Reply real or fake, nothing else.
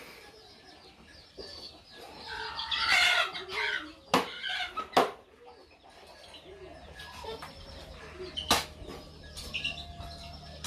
real